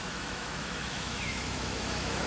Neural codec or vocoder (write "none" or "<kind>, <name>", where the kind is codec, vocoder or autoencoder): autoencoder, DAC-VAE